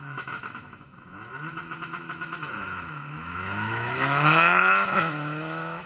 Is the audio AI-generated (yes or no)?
yes